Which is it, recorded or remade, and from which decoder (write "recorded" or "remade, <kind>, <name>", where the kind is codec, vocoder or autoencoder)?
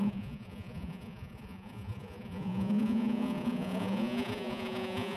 remade, vocoder, Vocos